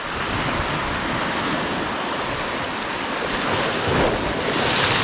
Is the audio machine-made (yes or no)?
no